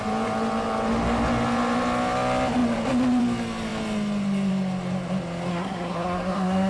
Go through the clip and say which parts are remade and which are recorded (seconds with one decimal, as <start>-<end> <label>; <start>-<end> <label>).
0.0-5.5 recorded; 5.5-6.7 remade